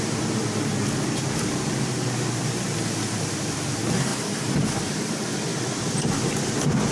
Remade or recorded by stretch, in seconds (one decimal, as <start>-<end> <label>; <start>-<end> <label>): 0.0-5.5 remade; 5.5-6.9 recorded